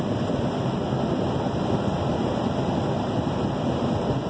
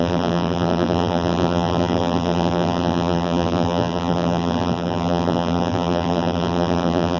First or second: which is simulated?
second